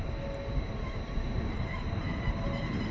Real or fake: real